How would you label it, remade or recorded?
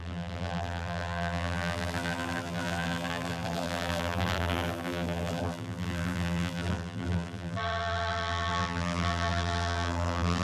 remade